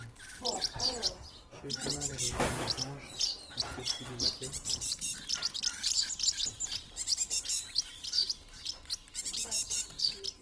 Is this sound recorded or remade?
remade